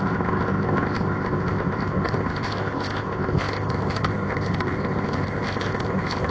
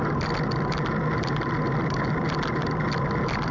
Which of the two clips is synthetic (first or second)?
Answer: first